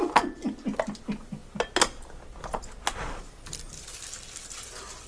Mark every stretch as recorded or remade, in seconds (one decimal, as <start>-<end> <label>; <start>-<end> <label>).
0.0-5.1 recorded